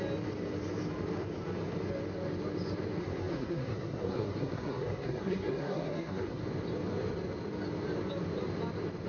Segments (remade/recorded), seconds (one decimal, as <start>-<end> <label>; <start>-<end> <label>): 0.0-3.0 recorded; 3.0-6.4 remade; 6.4-9.1 recorded